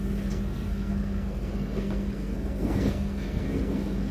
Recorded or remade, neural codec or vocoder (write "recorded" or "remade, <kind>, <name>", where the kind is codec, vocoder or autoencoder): remade, codec, SNAC